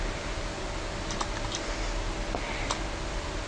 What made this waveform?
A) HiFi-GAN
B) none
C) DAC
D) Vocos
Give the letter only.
B